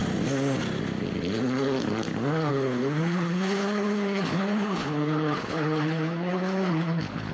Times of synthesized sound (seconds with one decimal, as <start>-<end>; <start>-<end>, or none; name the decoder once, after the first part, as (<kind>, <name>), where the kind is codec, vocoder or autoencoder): 2.5-7.3 (codec, HILCodec)